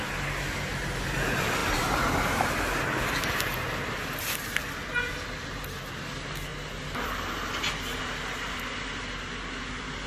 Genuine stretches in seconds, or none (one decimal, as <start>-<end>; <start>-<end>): 0.0-10.1